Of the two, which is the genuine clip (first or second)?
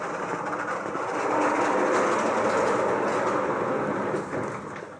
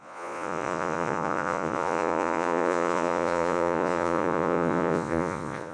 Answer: first